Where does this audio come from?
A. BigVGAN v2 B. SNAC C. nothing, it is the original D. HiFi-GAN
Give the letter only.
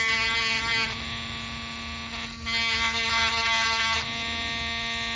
C